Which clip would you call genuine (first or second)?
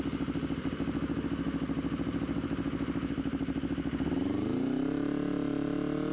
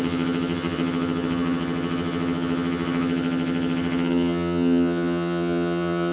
first